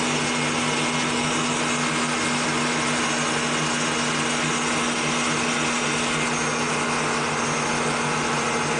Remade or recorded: recorded